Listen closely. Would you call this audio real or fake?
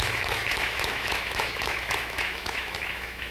fake